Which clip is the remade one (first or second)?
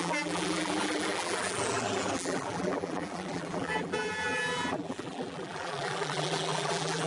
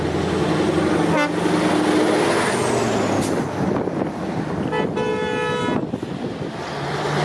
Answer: first